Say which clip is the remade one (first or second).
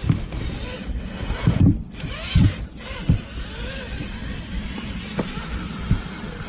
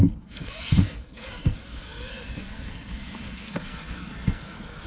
second